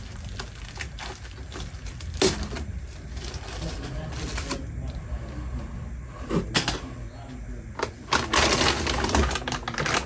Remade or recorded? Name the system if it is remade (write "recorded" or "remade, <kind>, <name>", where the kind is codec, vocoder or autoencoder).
recorded